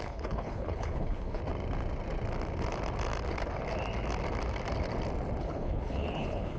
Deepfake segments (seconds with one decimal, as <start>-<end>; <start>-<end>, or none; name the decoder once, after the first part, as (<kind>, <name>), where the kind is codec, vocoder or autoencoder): 0.0-1.4 (codec, HILCodec); 5.4-6.6

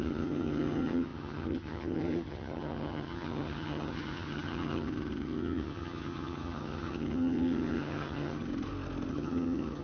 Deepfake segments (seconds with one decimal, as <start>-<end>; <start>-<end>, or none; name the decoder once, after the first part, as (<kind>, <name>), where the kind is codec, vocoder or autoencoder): 0.0-8.5 (vocoder, HiFi-GAN); 9.1-9.8

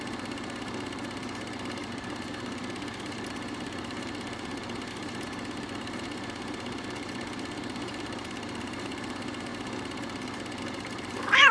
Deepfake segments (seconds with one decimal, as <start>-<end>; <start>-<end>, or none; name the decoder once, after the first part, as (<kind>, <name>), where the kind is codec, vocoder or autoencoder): 0.0-11.5 (vocoder, BigVGAN v2)

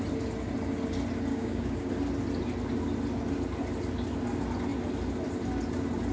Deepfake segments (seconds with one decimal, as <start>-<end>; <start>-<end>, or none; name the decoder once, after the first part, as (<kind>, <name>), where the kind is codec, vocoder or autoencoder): 1.3-1.9 (codec, DAC)

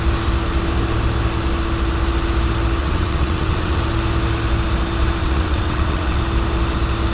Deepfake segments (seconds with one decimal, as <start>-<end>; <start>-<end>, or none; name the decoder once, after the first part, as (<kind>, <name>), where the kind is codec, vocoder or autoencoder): 2.8-3.8 (vocoder, WaveNeXt); 5.2-6.2